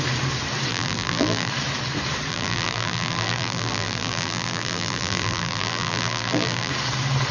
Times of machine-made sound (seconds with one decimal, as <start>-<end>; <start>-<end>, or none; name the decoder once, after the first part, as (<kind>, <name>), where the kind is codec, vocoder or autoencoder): 0.7-1.5 (vocoder, BigVGAN v2); 2.3-6.7